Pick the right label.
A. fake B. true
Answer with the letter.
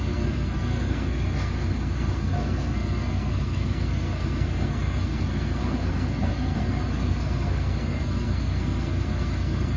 A